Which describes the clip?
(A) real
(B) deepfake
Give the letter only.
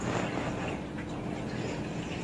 A